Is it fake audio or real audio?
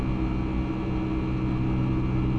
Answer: real